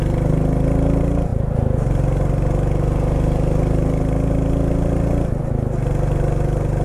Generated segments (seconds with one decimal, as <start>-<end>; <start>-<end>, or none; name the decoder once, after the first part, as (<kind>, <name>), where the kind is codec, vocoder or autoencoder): none